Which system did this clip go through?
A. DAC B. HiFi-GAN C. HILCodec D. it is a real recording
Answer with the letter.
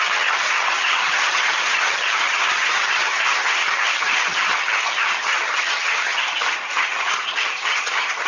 B